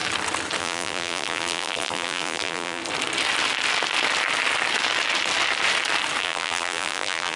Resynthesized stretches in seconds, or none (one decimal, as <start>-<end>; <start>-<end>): 0.6-2.8; 6.2-7.4